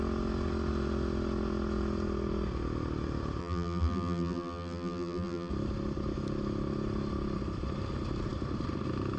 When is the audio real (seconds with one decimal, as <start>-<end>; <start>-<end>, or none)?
0.0-3.4; 5.5-9.2